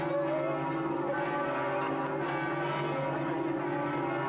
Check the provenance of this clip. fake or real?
real